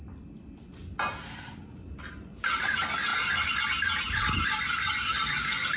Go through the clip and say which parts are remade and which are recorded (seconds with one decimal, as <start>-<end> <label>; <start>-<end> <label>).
0.0-5.8 recorded